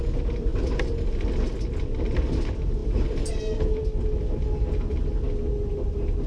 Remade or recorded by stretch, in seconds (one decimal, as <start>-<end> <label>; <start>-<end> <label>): 0.0-6.3 recorded